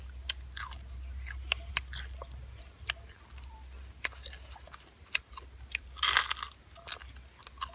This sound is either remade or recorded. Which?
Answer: recorded